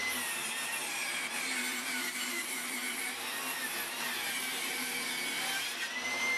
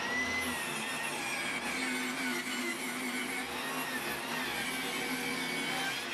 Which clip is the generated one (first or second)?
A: first